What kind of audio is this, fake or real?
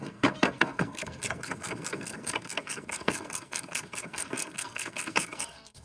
fake